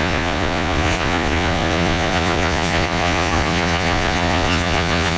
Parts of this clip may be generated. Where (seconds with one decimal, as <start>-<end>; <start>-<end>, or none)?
0.0-5.2